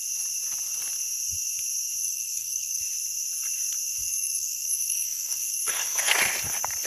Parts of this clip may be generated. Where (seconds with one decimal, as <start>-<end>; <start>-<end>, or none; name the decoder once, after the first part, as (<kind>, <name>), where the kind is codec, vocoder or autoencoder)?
2.0-2.8 (codec, SNAC); 4.0-6.1